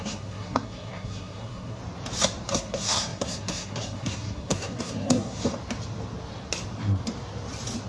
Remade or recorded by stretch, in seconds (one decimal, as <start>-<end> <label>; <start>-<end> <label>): 0.0-1.8 remade; 1.8-2.5 recorded; 2.5-5.5 remade; 5.5-7.9 recorded